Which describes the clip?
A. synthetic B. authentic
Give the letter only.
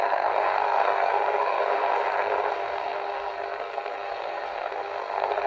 A